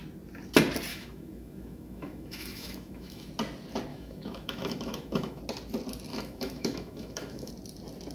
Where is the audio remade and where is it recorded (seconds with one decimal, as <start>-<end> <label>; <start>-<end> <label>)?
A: 0.0-0.9 recorded; 0.9-3.3 remade; 3.3-3.9 recorded; 3.9-5.4 remade; 5.4-6.1 recorded; 6.1-7.5 remade; 7.5-8.1 recorded